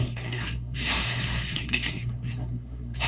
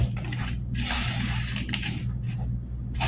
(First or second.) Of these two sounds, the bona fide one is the second